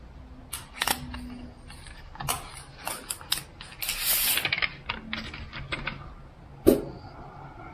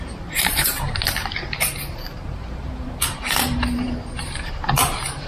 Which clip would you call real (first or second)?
first